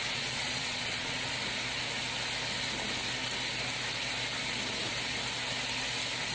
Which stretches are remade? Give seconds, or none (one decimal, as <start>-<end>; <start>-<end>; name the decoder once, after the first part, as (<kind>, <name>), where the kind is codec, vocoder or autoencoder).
0.0-1.3 (vocoder, Vocos)